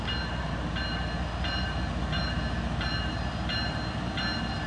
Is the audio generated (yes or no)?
no